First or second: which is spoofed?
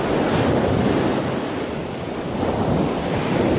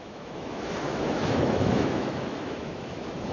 second